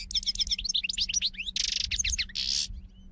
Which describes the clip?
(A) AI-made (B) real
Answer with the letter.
B